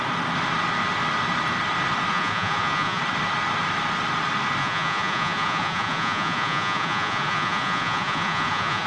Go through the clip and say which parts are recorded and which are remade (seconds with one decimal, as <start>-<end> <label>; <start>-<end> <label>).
0.0-2.1 recorded; 2.1-3.0 remade; 3.0-4.6 recorded; 4.6-8.9 remade